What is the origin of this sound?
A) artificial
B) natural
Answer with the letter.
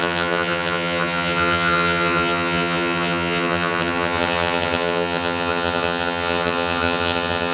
A